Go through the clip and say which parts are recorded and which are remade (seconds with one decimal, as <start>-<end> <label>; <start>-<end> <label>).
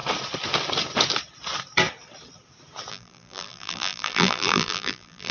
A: 0.0-2.9 recorded; 2.9-5.3 remade